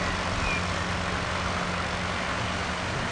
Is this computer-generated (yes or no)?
no